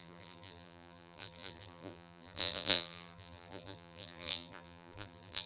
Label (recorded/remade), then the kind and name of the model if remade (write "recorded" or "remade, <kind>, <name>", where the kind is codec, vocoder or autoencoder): remade, vocoder, BigVGAN v2